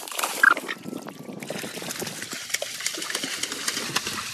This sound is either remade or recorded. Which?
recorded